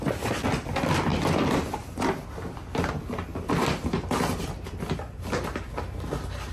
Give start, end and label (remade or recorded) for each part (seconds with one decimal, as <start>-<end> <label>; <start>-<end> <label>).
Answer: 0.0-6.5 recorded